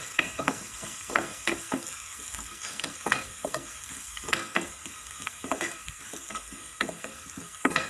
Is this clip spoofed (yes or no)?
yes